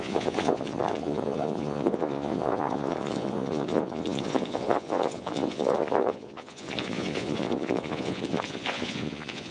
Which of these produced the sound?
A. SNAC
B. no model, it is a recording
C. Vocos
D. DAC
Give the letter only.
C